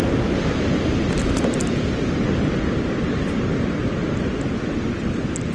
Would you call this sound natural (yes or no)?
yes